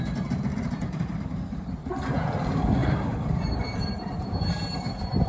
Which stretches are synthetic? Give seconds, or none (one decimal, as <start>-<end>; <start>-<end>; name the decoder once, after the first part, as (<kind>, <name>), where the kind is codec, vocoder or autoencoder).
0.5-1.7 (vocoder, BigVGAN v2); 2.8-4.6